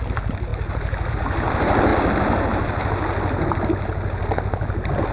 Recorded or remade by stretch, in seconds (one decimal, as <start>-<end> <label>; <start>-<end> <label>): 0.0-5.1 recorded